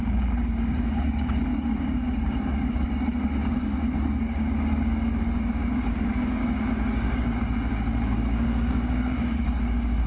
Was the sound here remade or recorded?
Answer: remade